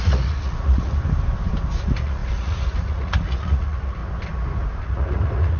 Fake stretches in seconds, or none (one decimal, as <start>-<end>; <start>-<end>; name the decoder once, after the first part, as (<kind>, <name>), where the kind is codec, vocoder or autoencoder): 0.0-1.0 (vocoder, Vocos); 1.8-4.0; 4.8-5.6